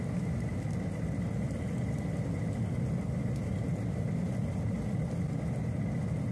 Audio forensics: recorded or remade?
recorded